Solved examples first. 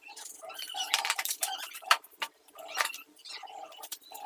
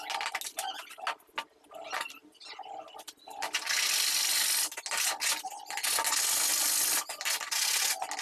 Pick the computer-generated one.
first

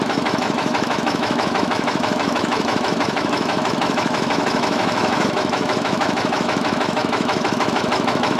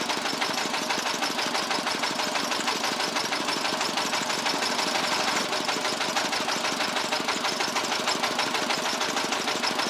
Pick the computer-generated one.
first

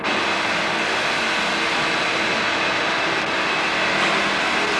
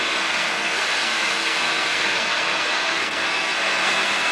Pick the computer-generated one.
second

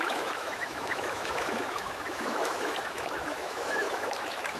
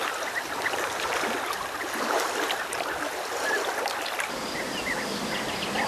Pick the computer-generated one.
first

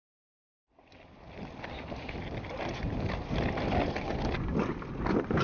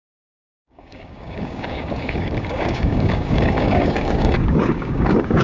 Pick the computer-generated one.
second